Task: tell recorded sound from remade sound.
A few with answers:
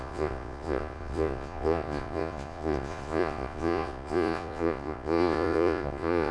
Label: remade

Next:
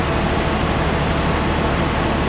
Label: recorded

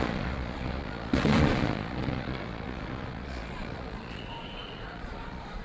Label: remade